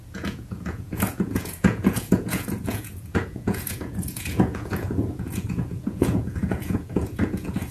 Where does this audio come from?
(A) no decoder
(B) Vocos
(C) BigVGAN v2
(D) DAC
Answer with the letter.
B